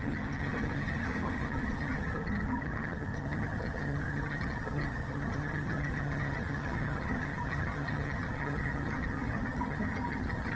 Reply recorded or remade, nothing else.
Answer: remade